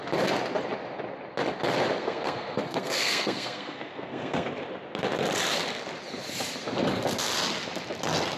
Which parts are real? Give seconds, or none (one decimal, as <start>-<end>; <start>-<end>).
0.0-2.0; 4.5-8.4